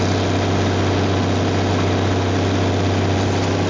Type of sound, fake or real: real